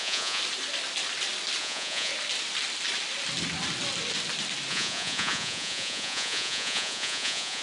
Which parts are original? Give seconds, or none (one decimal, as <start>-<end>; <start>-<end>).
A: 0.4-1.6; 2.1-4.7